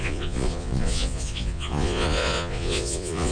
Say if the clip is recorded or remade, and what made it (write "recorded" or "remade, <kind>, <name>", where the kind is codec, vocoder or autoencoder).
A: remade, vocoder, Vocos